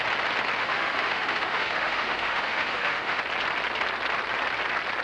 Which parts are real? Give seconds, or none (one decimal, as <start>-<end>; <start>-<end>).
0.0-0.6; 3.2-5.0